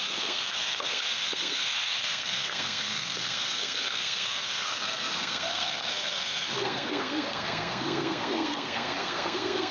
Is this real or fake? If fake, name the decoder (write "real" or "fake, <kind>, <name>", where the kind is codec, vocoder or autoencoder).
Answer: fake, codec, SNAC